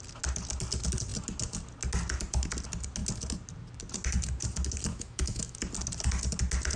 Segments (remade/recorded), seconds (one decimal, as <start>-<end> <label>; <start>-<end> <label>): 0.0-4.9 recorded; 4.9-5.6 remade; 5.6-6.8 recorded